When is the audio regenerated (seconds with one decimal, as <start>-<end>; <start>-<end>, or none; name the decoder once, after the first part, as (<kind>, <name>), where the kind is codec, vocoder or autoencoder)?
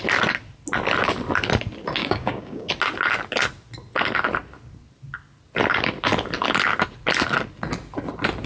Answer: 2.0-2.7 (codec, DAC)